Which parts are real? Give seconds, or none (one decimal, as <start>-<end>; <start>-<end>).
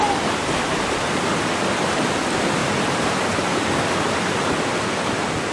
0.0-2.6; 3.6-5.5